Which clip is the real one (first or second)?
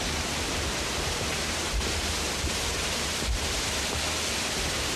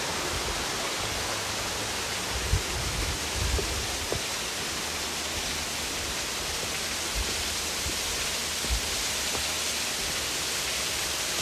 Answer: second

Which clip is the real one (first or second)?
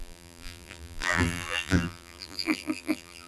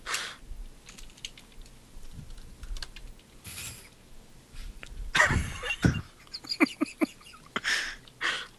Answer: second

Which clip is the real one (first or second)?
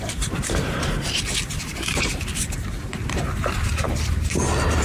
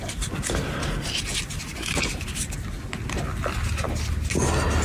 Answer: second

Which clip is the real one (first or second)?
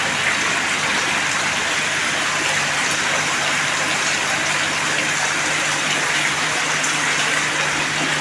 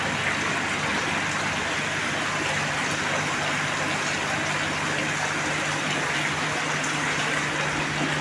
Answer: second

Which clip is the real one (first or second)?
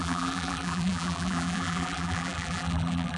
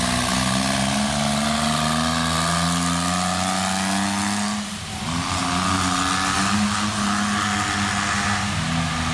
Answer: second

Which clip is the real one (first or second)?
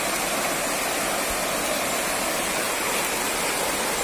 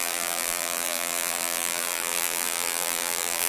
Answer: first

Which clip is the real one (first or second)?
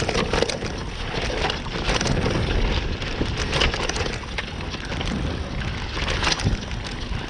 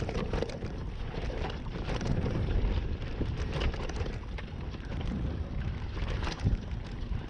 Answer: first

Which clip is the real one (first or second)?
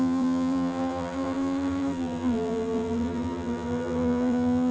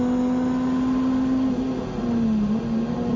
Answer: second